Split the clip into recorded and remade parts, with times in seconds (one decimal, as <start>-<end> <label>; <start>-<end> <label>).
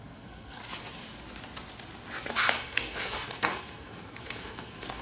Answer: 0.0-0.6 remade; 0.6-2.3 recorded; 2.3-5.0 remade